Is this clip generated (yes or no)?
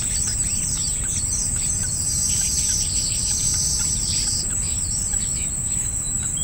yes